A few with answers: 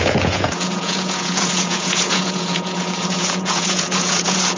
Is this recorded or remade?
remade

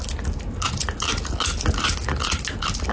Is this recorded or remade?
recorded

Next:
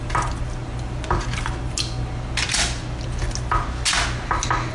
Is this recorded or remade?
recorded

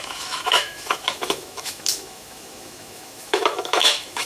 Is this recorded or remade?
remade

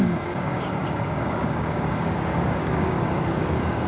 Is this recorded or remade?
remade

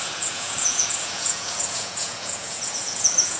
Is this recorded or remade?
remade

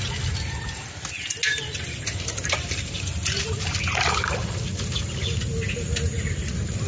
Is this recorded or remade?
recorded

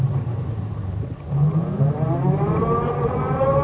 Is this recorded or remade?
remade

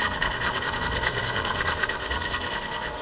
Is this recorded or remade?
remade